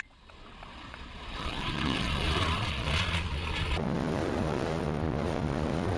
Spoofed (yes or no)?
yes